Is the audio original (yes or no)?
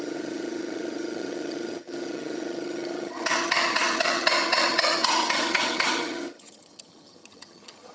no